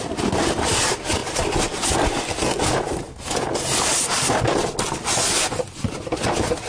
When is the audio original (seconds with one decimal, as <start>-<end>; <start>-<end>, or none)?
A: 0.0-1.2; 2.0-3.9; 4.4-6.7